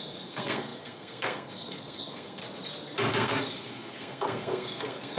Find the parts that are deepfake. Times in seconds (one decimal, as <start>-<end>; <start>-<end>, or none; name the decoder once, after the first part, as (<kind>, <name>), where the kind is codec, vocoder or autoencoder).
0.0-2.4 (codec, SNAC); 3.1-5.2